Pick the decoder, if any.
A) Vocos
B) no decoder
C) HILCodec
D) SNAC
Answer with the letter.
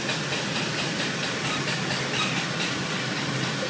B